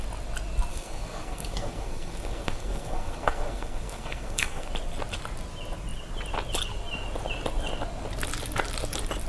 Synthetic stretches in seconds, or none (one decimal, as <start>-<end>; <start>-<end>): 0.7-4.7